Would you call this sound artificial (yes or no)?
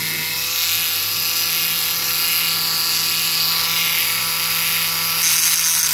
no